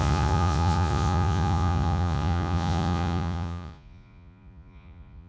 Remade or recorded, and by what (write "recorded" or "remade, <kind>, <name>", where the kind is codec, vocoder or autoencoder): remade, vocoder, Vocos